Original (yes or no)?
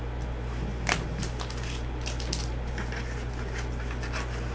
yes